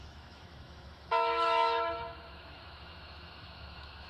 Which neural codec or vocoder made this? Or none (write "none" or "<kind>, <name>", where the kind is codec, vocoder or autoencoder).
autoencoder, DAC-VAE